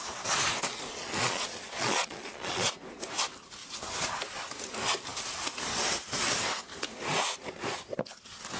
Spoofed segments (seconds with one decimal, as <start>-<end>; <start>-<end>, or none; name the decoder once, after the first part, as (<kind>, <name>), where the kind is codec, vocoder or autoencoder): 1.0-2.7 (vocoder, Vocos)

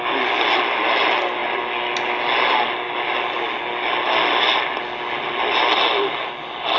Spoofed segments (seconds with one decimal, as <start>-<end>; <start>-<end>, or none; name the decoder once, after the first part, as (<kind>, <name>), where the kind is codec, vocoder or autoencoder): none